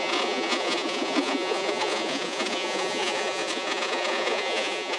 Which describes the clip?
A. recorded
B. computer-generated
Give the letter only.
B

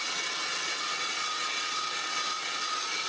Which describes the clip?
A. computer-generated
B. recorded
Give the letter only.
A